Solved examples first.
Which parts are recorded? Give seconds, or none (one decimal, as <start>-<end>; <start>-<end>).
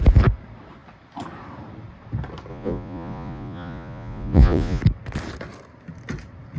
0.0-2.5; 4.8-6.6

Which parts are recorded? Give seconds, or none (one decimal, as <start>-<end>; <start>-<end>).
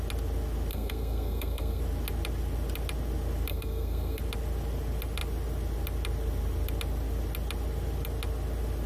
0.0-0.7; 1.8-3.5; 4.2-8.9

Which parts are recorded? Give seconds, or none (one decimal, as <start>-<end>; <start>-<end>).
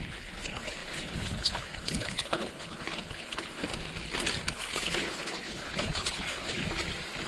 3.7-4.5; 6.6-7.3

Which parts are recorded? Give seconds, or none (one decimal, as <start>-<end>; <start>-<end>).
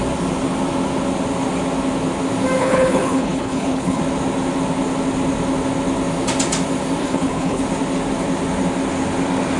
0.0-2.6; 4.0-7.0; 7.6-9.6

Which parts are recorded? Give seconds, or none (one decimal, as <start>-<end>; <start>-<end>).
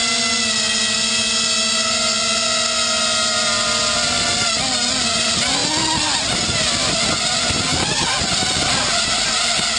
0.0-9.8